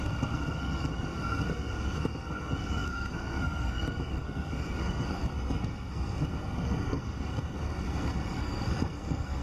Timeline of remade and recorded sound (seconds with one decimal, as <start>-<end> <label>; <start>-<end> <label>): 0.0-9.4 remade